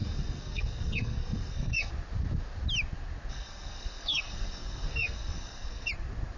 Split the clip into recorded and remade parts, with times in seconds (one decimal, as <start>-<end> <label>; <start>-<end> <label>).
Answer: 0.0-1.9 remade; 1.9-3.3 recorded; 3.3-5.9 remade; 5.9-6.4 recorded